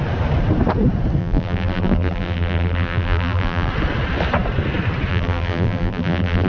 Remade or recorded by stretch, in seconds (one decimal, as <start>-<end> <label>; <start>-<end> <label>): 0.0-1.2 recorded; 1.2-3.7 remade; 3.7-5.1 recorded; 5.1-6.5 remade